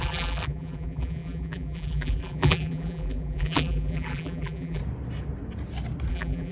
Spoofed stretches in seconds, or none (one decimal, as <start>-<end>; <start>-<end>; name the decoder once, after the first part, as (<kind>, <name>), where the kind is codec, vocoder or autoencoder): 0.0-4.8 (vocoder, BigVGAN v2); 6.1-6.5